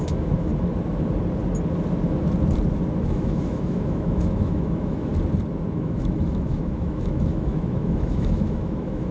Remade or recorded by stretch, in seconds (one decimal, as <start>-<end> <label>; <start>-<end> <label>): 0.0-0.5 remade; 0.5-3.0 recorded; 3.0-5.1 remade; 5.1-5.7 recorded; 5.7-9.1 remade